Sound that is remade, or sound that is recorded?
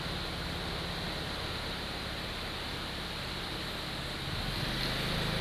recorded